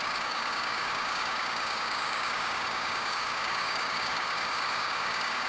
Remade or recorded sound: remade